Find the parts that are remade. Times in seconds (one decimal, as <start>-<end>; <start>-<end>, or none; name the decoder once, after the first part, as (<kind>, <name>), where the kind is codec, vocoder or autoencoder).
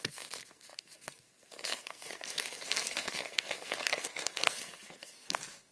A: 0.0-5.7 (codec, SNAC)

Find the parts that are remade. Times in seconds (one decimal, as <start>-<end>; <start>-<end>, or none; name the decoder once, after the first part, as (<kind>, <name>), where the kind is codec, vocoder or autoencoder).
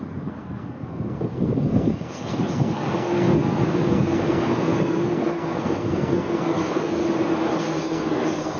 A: 0.0-7.0 (codec, SNAC); 7.6-8.6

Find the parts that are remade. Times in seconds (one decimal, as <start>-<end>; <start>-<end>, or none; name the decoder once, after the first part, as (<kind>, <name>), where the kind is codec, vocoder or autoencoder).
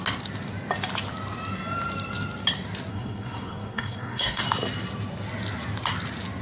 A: 2.9-4.4 (codec, SNAC)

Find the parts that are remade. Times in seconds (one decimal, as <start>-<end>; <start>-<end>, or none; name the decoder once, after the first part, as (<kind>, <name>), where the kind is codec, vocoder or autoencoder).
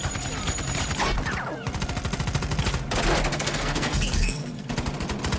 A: 3.3-4.7 (codec, SNAC)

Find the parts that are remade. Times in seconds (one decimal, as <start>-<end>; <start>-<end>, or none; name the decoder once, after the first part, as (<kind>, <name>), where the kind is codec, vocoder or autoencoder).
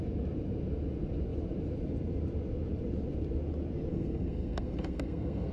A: 3.9-5.5 (codec, SNAC)